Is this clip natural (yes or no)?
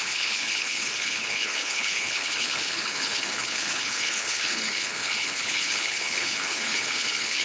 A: no